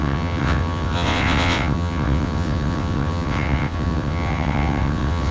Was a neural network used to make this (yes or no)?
yes